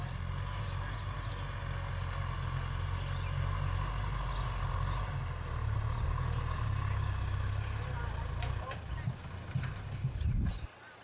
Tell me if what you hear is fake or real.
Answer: real